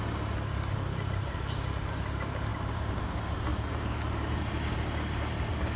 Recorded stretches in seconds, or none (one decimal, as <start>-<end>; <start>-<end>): 0.0-2.5; 3.0-3.5; 4.5-5.8